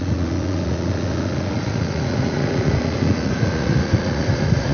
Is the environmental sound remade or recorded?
remade